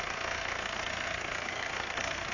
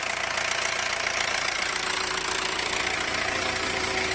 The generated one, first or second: first